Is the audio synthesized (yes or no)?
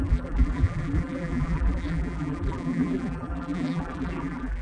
yes